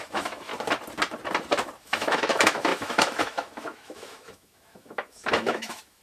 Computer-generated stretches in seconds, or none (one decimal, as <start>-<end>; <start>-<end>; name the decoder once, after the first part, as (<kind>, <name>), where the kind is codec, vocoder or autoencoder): 0.0-0.5 (autoencoder, DAC-VAE); 1.8-6.0